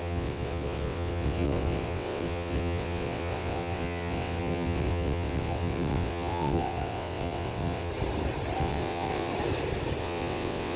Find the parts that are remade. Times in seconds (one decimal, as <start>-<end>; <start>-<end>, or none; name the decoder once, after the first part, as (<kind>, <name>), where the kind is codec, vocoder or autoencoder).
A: 0.0-7.9 (vocoder, WaveNeXt); 8.6-9.3; 10.0-10.8